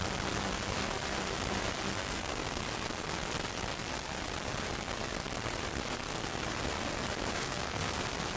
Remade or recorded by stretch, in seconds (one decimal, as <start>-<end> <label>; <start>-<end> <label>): 0.0-2.0 recorded; 2.0-2.6 remade; 2.6-7.3 recorded; 7.3-8.0 remade; 8.0-8.4 recorded